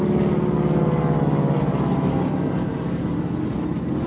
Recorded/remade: recorded